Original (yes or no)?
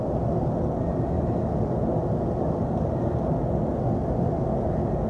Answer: yes